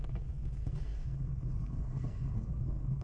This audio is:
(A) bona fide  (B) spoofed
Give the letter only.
B